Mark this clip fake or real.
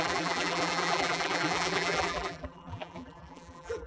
fake